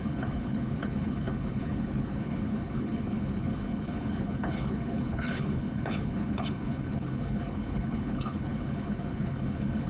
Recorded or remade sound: remade